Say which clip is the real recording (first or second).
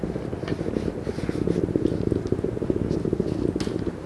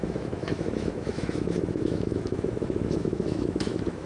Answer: first